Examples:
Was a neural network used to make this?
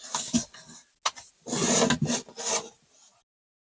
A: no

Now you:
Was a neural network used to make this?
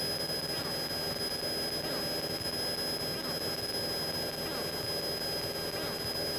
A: no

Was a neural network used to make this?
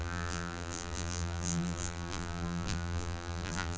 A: yes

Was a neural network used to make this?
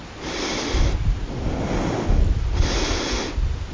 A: no